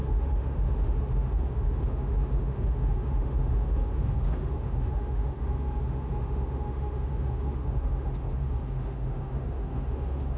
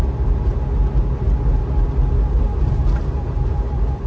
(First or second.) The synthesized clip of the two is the first